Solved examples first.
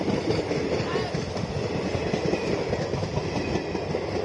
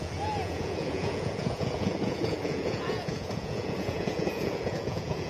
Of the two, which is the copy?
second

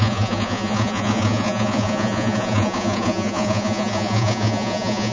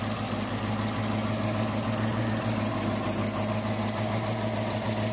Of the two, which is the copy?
first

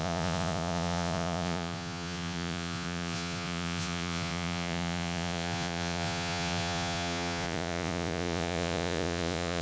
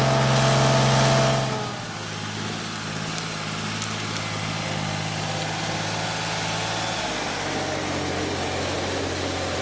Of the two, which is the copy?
first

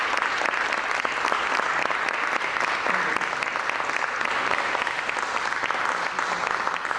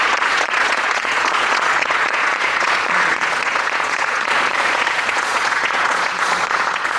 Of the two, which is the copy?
second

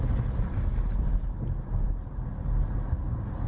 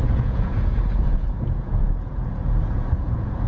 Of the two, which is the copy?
second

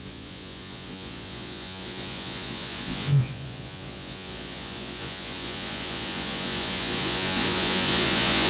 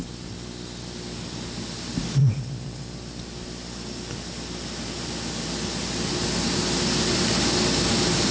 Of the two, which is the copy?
first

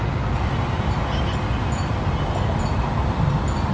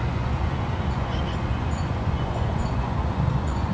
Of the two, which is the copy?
second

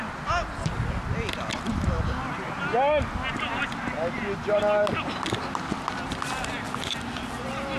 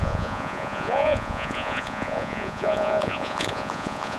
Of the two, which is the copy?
second